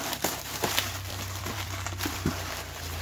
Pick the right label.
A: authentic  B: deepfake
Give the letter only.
B